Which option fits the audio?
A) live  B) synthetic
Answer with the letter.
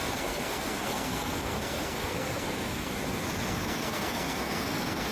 B